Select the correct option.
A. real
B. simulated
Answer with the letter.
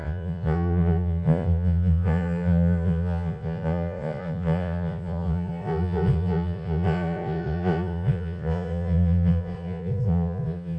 B